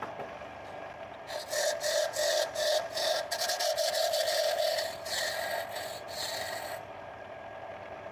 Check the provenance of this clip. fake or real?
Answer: real